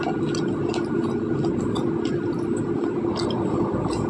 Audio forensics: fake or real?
real